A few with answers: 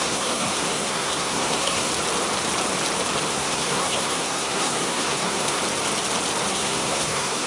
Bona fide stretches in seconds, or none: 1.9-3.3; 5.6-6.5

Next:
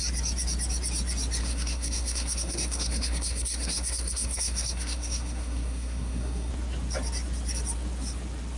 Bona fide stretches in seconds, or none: 0.0-1.4; 6.5-8.6

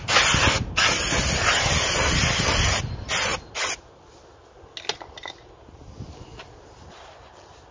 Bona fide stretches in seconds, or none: 0.0-7.7